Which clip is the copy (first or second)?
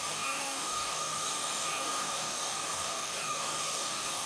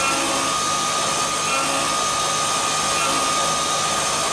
first